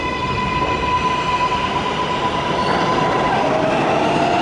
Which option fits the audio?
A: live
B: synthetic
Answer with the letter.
A